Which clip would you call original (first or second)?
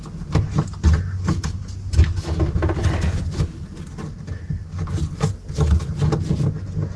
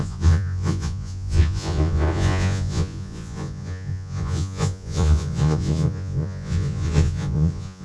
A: first